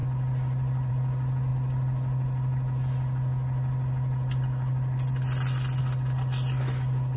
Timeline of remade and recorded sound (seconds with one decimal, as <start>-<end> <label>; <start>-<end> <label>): 0.0-7.2 recorded